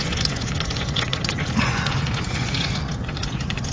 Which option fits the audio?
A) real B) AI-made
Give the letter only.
B